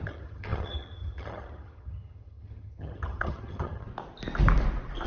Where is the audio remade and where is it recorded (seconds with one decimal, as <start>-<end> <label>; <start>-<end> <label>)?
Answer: 0.0-3.9 remade; 3.9-5.1 recorded